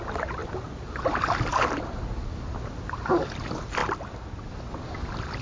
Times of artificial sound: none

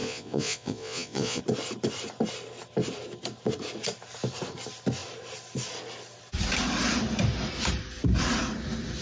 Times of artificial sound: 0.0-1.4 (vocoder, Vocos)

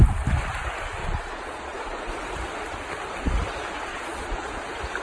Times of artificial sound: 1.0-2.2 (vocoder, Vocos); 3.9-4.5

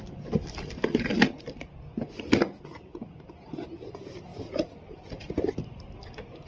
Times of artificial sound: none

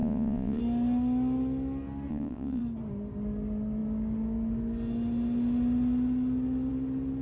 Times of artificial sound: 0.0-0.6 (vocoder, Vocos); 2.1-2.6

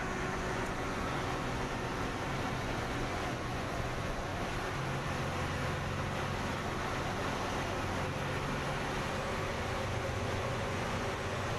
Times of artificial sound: 0.0-1.9 (vocoder, Vocos); 2.5-4.3; 9.5-11.6

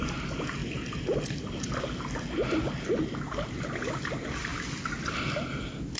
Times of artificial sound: none